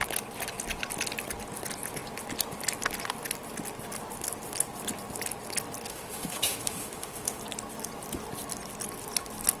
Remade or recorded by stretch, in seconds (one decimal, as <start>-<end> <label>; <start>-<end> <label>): 0.0-5.9 recorded; 5.9-7.4 remade; 7.4-9.6 recorded